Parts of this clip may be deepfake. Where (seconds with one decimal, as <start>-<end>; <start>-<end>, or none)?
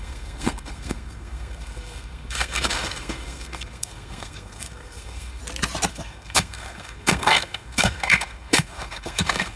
0.0-5.4; 5.9-9.6